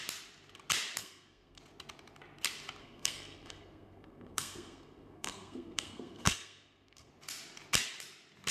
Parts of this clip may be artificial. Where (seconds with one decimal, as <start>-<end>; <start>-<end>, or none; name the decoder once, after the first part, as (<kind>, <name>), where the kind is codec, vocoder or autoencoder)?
1.0-1.6 (codec, SNAC); 2.8-7.1